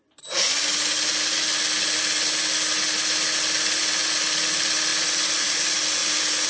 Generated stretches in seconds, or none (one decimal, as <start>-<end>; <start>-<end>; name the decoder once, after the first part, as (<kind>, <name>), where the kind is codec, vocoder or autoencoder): 4.9-5.5 (vocoder, BigVGAN v2)